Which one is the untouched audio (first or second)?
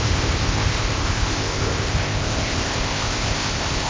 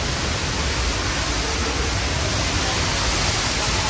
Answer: second